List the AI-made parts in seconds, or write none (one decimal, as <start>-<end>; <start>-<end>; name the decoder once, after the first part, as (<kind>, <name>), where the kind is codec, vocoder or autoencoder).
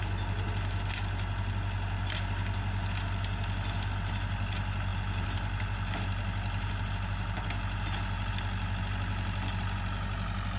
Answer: none